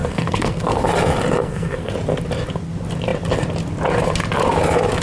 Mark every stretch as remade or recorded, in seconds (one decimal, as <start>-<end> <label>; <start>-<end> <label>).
0.0-0.8 remade; 0.8-1.4 recorded; 1.4-1.9 remade; 1.9-5.0 recorded